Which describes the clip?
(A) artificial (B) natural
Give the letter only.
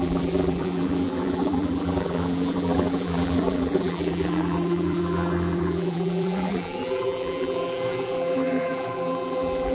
A